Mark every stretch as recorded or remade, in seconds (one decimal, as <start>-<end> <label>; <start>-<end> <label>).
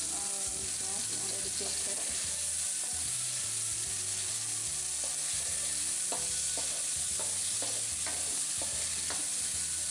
0.0-9.9 recorded